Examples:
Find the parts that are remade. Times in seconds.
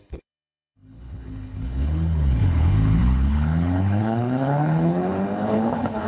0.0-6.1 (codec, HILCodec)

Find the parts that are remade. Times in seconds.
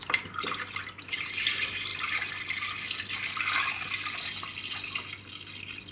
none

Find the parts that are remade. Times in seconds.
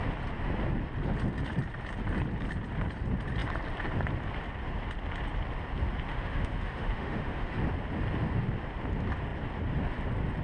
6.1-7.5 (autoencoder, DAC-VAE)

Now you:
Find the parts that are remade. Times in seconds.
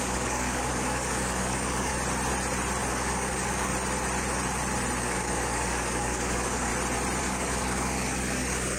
0.0-1.9 (codec, DAC); 2.9-3.7; 5.0-6.7; 7.2-8.8